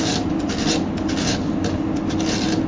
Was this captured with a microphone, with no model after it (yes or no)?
yes